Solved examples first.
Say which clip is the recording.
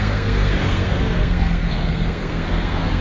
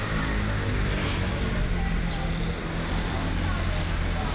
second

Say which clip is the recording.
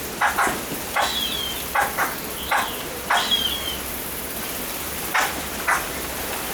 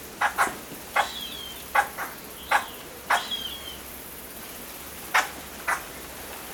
second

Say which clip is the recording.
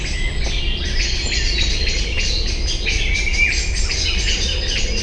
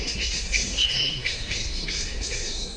first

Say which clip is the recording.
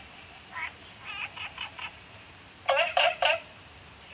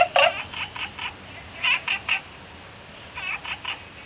second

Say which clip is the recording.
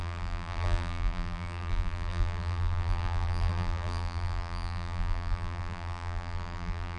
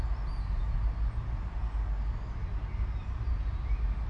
second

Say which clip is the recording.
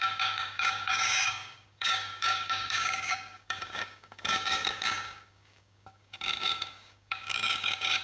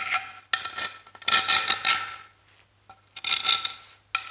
second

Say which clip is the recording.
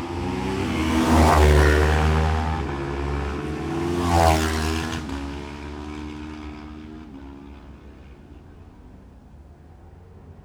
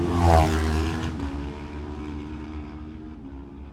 first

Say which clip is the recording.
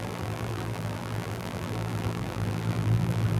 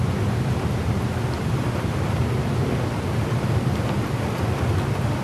second